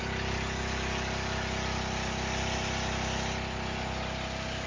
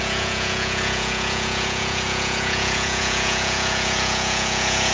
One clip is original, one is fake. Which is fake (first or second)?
second